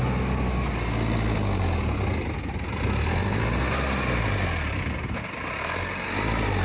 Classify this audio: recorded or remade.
recorded